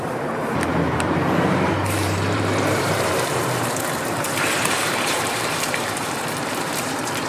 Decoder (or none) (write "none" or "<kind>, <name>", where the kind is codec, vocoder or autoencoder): vocoder, BigVGAN v2